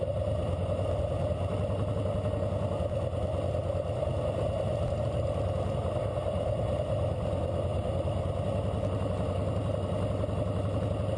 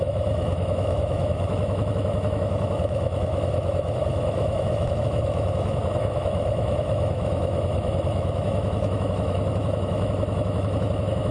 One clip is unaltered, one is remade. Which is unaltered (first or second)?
first